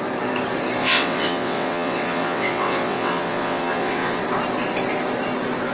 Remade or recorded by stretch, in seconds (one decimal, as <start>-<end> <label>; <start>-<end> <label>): 0.0-0.8 recorded; 0.8-4.2 remade; 4.2-5.7 recorded